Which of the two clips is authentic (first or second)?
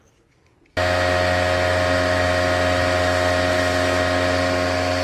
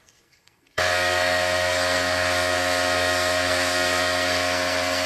first